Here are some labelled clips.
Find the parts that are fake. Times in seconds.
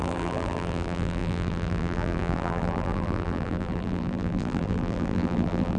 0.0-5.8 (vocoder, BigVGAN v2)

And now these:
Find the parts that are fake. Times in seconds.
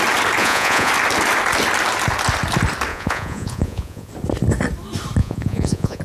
0.4-0.9 (vocoder, Vocos); 2.9-4.1; 5.2-6.0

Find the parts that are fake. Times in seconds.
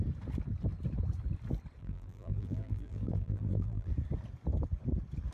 1.8-3.9 (vocoder, BigVGAN v2)